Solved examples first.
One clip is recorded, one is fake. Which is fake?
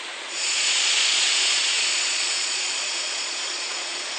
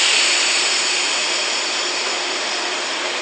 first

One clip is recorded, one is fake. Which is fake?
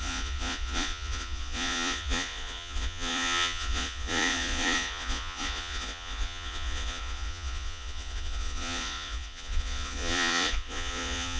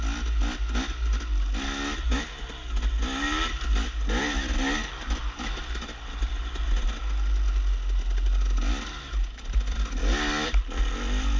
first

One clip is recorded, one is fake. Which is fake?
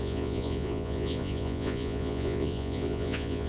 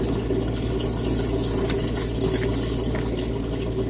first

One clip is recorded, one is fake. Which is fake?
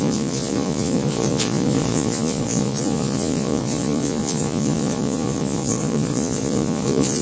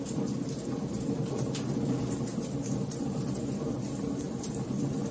first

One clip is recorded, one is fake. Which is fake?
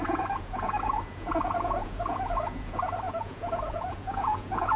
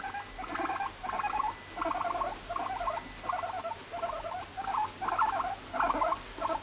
first